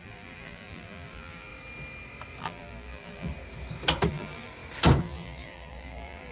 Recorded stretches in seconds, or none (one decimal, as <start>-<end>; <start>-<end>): 1.5-2.4; 3.3-4.1; 4.5-5.0